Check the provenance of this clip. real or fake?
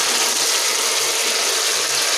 real